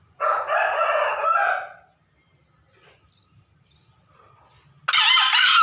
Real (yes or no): yes